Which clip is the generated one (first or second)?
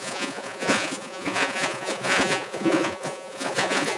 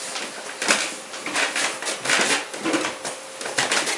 first